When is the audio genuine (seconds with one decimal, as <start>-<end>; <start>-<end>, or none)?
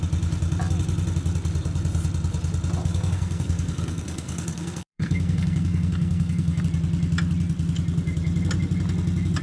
0.0-2.8; 6.6-9.4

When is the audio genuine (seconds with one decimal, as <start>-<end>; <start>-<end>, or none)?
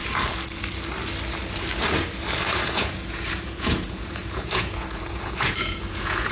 0.0-2.5